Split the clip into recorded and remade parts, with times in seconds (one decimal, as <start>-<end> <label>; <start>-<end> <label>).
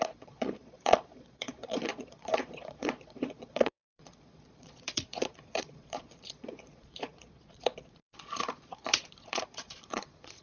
0.0-10.4 remade